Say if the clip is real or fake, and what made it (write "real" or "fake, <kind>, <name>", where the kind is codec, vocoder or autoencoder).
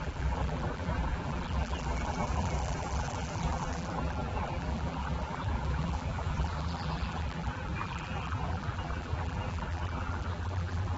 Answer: fake, vocoder, BigVGAN v2